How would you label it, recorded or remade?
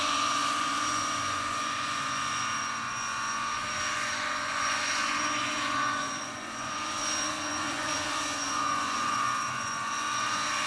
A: remade